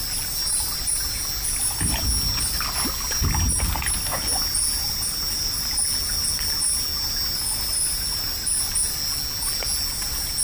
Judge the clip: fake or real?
real